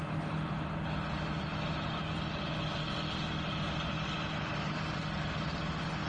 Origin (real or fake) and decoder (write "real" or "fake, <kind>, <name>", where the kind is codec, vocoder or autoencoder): real